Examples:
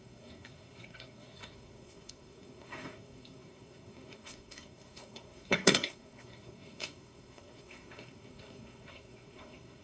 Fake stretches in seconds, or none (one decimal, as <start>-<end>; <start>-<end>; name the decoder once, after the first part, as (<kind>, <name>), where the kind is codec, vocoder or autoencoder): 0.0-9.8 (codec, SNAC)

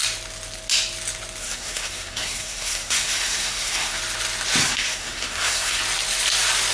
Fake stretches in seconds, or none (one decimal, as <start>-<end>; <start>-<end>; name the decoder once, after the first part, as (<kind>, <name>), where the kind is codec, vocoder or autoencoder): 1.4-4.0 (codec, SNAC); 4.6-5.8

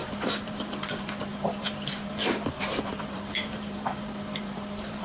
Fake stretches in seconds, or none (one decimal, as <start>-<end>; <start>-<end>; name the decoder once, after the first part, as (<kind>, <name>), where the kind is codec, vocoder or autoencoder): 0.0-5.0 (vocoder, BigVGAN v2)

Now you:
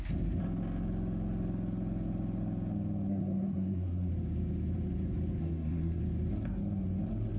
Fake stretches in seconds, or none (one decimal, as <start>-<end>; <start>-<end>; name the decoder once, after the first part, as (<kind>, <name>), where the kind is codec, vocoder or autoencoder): 3.1-4.1 (codec, SNAC); 5.4-6.0